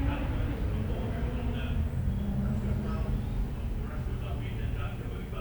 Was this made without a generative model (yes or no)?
yes